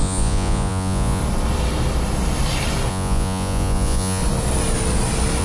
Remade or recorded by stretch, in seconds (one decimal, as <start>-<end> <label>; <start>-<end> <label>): 0.0-1.2 remade; 1.2-2.9 recorded; 2.9-4.2 remade; 4.2-5.4 recorded